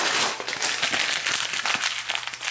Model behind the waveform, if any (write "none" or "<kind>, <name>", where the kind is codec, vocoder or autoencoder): none